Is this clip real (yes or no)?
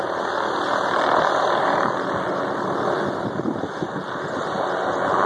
yes